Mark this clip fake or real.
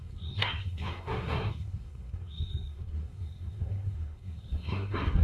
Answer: fake